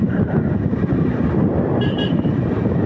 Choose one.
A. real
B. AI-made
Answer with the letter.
B